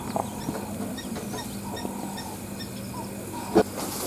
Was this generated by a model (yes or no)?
no